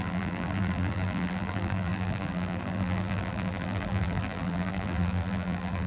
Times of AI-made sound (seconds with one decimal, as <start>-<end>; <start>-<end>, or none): 0.0-5.9